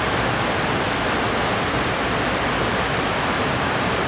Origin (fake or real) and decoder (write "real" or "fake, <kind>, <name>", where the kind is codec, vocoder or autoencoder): real